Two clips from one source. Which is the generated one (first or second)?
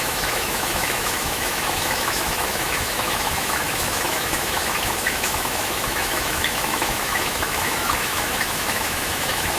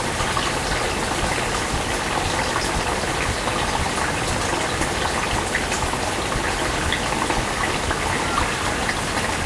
first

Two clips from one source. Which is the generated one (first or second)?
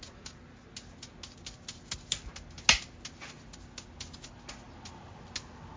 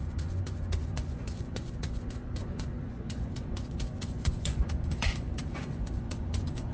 second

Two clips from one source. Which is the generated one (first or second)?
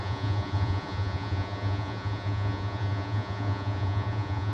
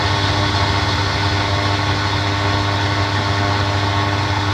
first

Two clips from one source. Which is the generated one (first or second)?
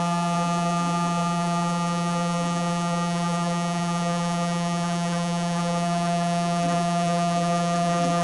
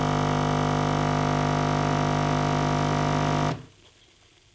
first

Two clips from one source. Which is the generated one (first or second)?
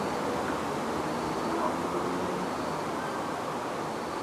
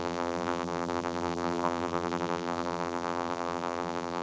second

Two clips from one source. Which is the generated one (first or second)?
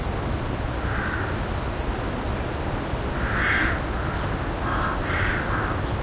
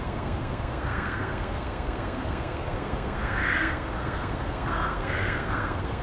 second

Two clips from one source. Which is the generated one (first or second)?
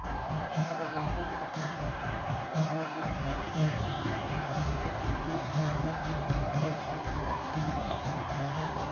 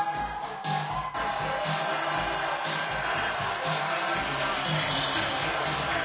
first